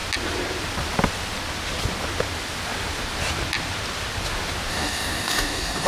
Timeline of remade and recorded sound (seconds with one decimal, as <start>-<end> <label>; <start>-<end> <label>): 0.0-4.7 recorded; 4.7-5.9 remade